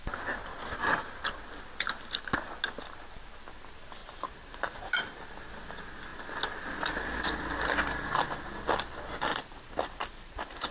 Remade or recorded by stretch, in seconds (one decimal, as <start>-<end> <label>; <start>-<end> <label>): 0.0-4.0 recorded; 4.0-5.2 remade; 5.2-9.3 recorded; 9.3-10.7 remade